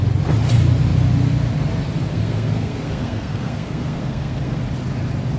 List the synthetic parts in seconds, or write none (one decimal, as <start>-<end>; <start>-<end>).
2.1-4.6